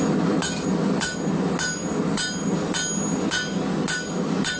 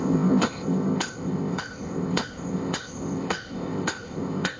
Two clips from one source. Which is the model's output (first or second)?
second